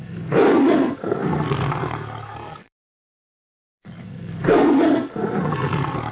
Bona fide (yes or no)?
no